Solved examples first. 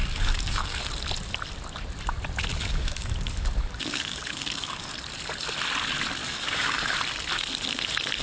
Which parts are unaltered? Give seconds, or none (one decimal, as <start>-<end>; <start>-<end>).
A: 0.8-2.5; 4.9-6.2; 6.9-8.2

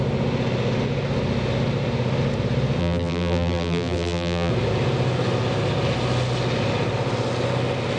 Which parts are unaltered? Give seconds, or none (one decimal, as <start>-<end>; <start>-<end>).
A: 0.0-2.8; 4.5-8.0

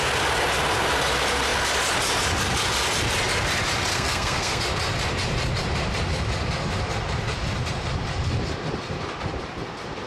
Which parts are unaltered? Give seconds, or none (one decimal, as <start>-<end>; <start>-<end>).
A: 0.0-3.9; 4.6-10.1

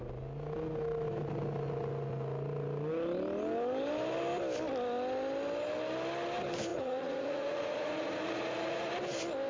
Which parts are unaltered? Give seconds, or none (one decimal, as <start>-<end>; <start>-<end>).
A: 0.0-6.7; 8.9-9.5